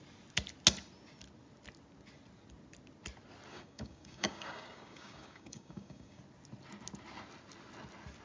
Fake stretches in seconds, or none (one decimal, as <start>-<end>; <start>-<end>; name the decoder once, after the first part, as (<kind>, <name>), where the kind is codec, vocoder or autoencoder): 3.5-6.2 (codec, DAC)